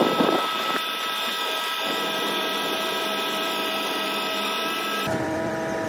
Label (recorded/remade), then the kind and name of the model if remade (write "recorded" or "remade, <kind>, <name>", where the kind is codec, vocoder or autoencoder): remade, vocoder, BigVGAN v2